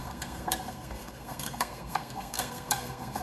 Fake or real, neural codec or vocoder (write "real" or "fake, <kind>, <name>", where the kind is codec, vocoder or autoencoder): fake, codec, SNAC